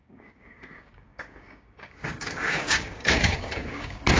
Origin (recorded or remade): remade